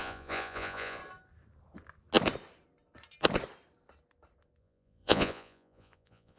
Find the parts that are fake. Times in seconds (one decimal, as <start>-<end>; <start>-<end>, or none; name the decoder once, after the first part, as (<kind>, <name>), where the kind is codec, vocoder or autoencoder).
0.0-1.0 (vocoder, Vocos); 4.6-6.4